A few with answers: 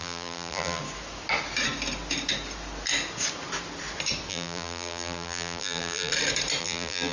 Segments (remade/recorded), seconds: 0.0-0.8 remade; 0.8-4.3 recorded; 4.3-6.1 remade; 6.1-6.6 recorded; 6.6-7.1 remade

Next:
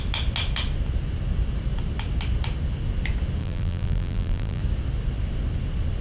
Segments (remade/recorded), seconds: 0.0-3.4 recorded; 3.4-4.6 remade; 4.6-6.0 recorded

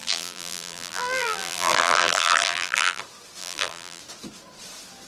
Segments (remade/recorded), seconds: 0.0-3.0 remade; 3.0-3.4 recorded; 3.4-4.0 remade; 4.0-5.1 recorded

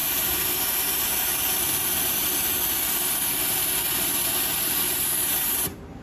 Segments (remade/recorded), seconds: 0.0-0.6 remade; 0.6-1.5 recorded; 1.5-2.2 remade; 2.2-6.0 recorded

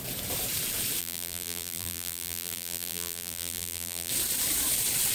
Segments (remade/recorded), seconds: 0.0-1.0 recorded; 1.0-4.1 remade; 4.1-5.1 recorded